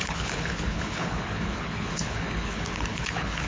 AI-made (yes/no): yes